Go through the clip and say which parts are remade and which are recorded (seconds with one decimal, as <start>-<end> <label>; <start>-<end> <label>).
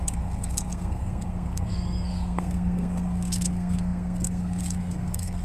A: 0.0-5.4 remade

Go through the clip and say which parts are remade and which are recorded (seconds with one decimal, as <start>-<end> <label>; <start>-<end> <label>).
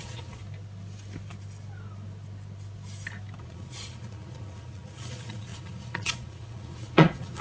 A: 0.0-0.4 remade; 0.4-3.4 recorded; 3.4-7.4 remade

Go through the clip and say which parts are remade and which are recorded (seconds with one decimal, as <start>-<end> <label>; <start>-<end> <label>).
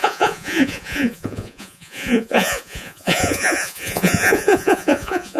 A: 0.0-5.4 remade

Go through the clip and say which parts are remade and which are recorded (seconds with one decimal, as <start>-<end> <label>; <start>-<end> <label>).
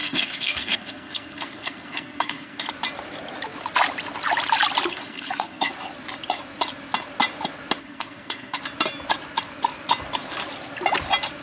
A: 0.0-2.7 remade; 2.7-4.9 recorded; 4.9-5.7 remade; 5.7-7.8 recorded; 7.8-8.6 remade; 8.6-11.4 recorded